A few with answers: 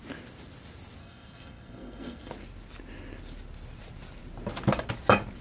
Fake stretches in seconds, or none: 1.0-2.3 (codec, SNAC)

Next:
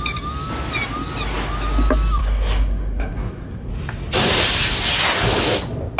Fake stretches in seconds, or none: 2.2-3.7 (codec, SNAC)

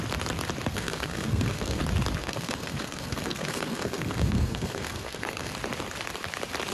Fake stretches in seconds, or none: 0.7-1.8 (codec, SNAC); 2.2-5.5

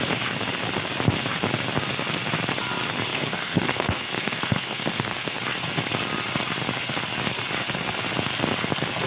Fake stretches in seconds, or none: 3.1-5.4 (codec, SNAC)